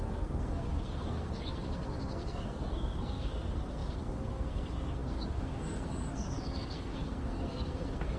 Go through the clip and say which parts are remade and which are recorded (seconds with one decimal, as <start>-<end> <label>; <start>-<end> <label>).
0.0-8.2 remade